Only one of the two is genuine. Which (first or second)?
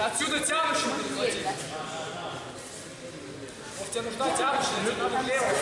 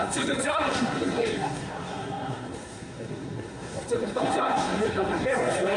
first